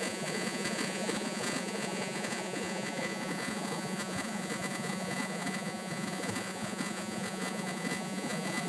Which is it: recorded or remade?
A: remade